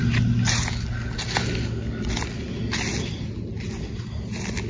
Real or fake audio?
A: real